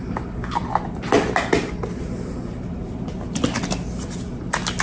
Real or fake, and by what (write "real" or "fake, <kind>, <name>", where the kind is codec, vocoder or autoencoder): real